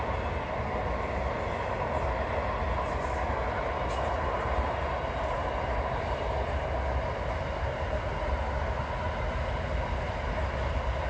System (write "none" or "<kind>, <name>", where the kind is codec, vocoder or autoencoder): none